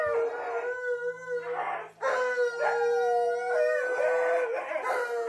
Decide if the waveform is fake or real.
real